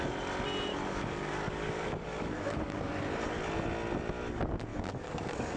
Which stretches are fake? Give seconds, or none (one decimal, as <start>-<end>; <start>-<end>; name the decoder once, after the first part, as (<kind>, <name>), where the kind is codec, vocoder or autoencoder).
0.7-2.9 (codec, DAC); 4.7-5.6